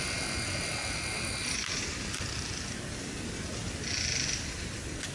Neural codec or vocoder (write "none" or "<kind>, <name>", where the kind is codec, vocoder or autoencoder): none